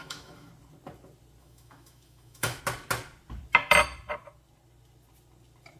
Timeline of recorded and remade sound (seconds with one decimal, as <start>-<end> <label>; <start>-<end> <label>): 0.0-0.5 remade; 0.5-1.4 recorded; 1.4-2.6 remade; 2.6-5.8 recorded